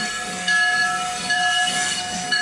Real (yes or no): no